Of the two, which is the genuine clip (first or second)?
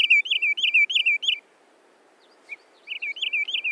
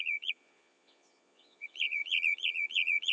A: first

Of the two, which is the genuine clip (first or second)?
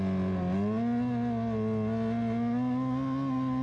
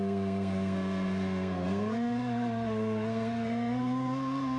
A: first